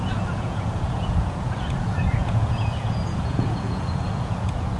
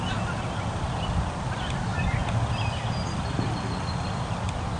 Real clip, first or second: second